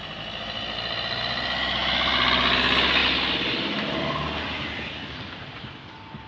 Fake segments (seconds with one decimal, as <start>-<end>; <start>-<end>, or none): none